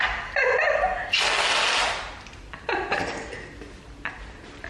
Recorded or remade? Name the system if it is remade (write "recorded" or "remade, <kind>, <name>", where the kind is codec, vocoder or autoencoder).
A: recorded